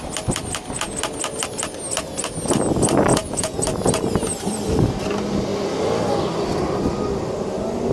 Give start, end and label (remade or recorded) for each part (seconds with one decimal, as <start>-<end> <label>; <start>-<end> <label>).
0.0-3.1 recorded; 3.1-3.6 remade; 3.6-7.9 recorded